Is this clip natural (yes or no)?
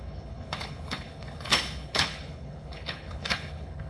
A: no